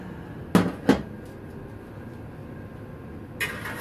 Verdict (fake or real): real